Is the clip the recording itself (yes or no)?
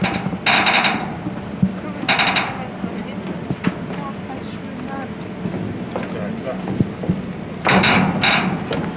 yes